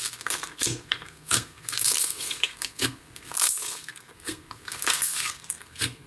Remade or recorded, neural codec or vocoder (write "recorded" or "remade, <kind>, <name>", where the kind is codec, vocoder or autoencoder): remade, codec, SNAC